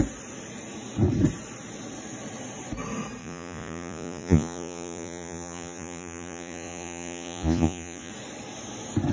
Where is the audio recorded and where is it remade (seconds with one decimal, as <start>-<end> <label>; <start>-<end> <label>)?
0.0-3.2 recorded; 3.2-8.1 remade; 8.1-9.1 recorded